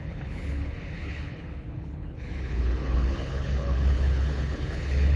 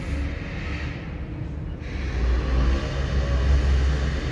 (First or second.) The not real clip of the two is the first